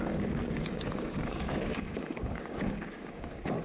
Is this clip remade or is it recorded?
remade